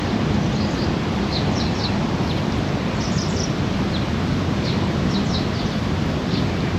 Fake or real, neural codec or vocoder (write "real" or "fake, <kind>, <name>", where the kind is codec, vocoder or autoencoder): real